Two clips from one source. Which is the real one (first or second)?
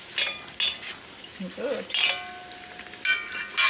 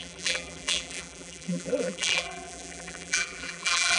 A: first